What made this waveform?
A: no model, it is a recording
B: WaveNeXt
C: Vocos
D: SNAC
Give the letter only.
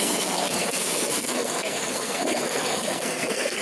D